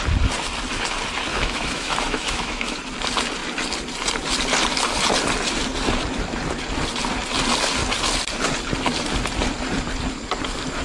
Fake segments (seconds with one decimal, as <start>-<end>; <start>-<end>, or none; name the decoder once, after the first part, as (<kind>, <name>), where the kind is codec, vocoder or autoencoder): 1.3-2.8 (autoencoder, DAC-VAE)